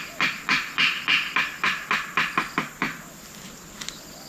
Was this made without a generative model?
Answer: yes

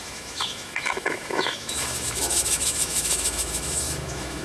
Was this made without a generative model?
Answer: no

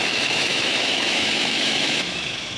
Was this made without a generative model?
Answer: no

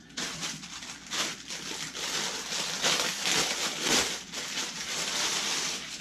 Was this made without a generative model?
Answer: yes